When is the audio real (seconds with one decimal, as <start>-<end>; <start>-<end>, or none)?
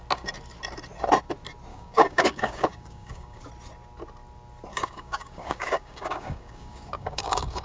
0.0-1.7; 3.4-4.7